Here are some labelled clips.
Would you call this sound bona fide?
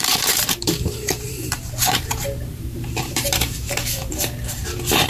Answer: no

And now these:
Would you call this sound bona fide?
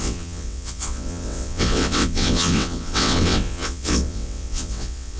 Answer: no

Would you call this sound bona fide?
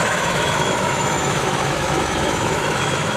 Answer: no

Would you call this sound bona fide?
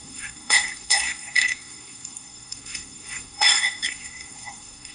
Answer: no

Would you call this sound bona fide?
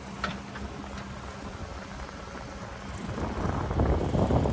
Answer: no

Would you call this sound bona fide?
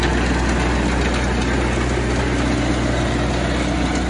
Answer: yes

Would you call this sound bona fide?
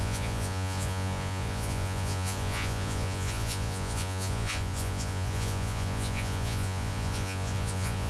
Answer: no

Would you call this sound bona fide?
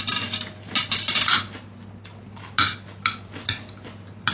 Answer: yes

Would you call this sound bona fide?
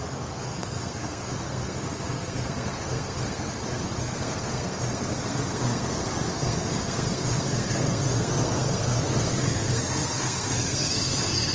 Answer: no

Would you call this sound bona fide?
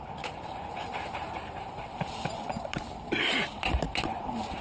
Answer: yes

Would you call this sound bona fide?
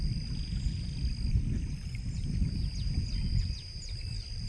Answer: yes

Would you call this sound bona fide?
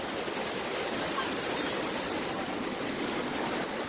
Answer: yes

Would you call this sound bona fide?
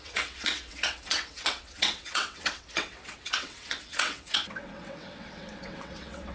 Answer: no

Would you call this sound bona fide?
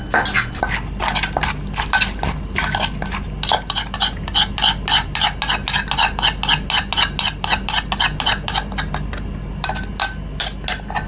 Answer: yes